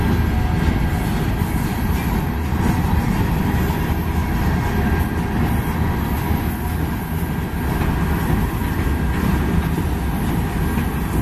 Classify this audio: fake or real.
real